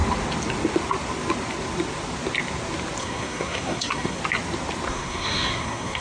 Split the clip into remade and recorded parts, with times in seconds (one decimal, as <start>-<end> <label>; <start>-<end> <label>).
0.0-3.0 recorded; 3.0-4.2 remade; 4.2-4.9 recorded; 4.9-6.0 remade